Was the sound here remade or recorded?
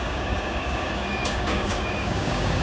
remade